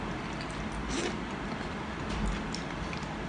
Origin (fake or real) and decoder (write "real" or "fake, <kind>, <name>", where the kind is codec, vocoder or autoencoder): real